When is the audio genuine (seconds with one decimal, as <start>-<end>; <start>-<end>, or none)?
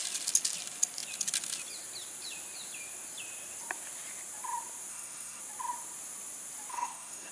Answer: 0.0-4.9; 5.4-6.7